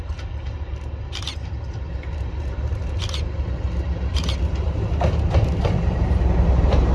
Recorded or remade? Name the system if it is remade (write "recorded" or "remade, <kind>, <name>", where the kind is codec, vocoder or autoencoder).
recorded